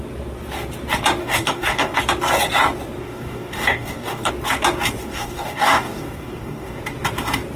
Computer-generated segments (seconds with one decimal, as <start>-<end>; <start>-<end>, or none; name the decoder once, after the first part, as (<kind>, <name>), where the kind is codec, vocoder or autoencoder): 1.2-2.0 (codec, DAC); 3.0-4.3; 5.0-6.8